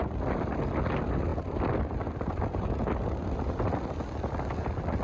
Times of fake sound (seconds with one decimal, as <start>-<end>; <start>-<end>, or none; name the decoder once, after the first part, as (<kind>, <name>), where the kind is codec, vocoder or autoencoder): none